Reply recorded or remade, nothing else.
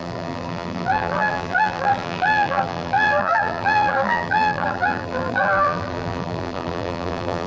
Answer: remade